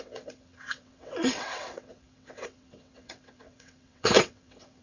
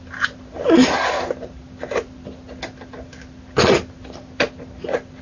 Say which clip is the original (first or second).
second